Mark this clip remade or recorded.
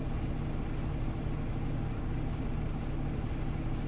recorded